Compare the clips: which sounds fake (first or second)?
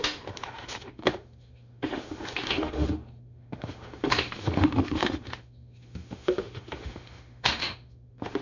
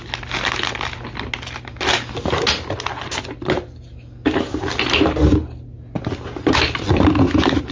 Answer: first